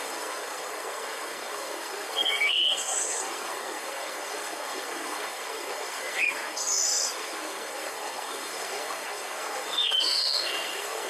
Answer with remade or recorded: remade